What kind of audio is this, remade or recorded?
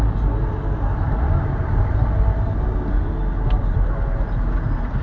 recorded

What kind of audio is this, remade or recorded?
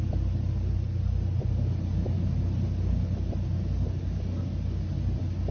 recorded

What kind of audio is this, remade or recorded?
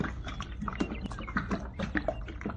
remade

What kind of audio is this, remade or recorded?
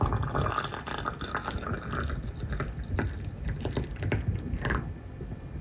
recorded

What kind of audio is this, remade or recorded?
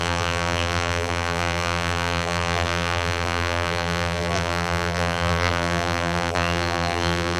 remade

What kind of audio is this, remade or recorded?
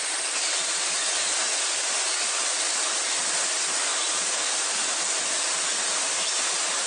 recorded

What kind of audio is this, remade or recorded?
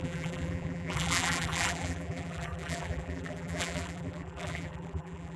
remade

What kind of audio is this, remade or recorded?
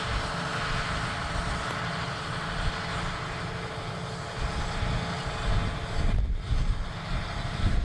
recorded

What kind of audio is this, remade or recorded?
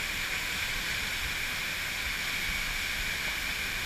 recorded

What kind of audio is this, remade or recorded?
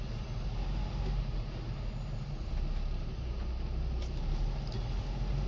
recorded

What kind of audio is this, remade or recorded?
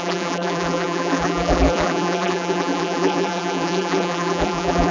remade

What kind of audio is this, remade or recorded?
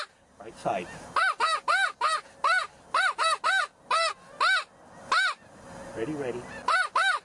recorded